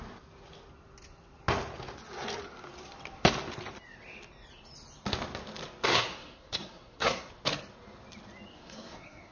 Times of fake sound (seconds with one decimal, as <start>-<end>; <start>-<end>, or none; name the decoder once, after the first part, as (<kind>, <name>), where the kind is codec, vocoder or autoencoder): 5.9-7.3 (codec, SNAC); 8.5-9.3